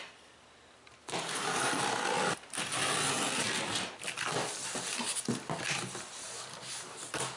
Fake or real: real